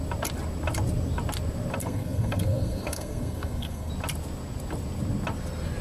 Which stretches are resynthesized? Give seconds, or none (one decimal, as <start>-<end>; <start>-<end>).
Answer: 1.8-3.9